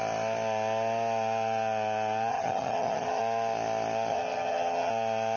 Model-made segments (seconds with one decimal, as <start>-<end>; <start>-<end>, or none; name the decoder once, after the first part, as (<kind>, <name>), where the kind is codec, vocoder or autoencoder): 2.3-3.2 (vocoder, HiFi-GAN); 4.1-4.9